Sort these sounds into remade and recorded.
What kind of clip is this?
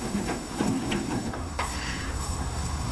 remade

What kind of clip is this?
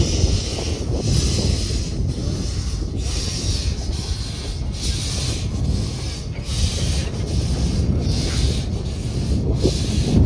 recorded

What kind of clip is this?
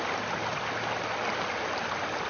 recorded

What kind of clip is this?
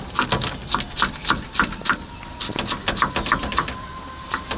recorded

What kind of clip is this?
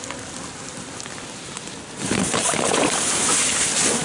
recorded